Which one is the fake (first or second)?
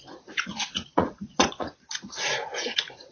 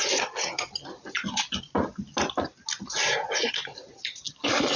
first